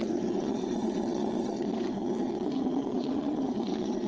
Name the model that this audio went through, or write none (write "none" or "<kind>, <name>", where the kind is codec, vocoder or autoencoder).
vocoder, WaveNeXt